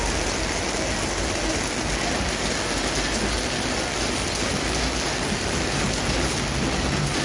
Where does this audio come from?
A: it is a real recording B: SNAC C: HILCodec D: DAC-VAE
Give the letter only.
A